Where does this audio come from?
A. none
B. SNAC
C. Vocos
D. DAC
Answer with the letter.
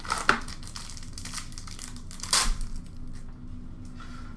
A